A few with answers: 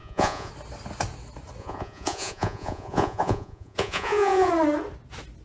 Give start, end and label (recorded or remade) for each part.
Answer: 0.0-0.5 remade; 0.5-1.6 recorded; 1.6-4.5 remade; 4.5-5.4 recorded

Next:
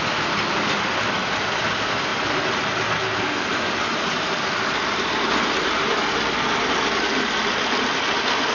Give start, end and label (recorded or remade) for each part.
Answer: 0.0-8.5 recorded

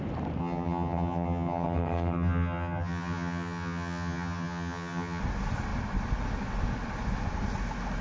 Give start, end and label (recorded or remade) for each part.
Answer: 0.0-0.4 recorded; 0.4-5.2 remade; 5.2-8.0 recorded

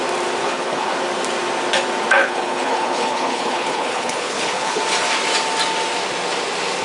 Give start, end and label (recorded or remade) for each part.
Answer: 0.0-0.4 recorded; 0.4-0.9 remade; 0.9-2.2 recorded; 2.2-4.8 remade; 4.8-6.8 recorded

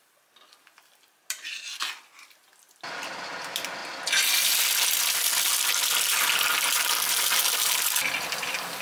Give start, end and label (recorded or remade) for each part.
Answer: 0.0-8.8 recorded

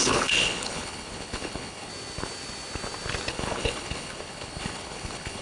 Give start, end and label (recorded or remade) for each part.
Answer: 0.0-1.9 remade; 1.9-3.3 recorded; 3.3-5.4 remade

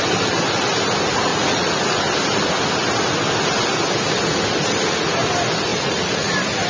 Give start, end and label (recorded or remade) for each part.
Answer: 0.0-1.3 recorded; 1.3-2.0 remade; 2.0-5.7 recorded; 5.7-6.3 remade; 6.3-6.7 recorded